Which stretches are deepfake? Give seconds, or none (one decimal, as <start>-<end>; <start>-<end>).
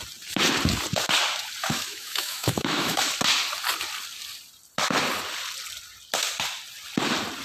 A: 1.6-3.1